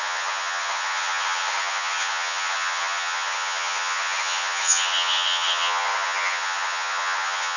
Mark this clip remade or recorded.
remade